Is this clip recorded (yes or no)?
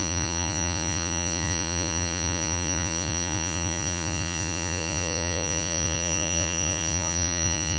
no